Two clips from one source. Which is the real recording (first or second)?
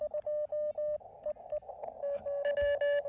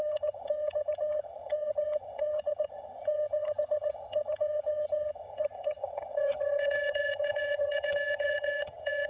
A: first